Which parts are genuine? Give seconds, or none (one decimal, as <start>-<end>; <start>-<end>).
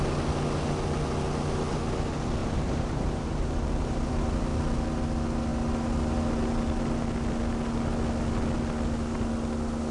0.0-2.4; 4.1-9.9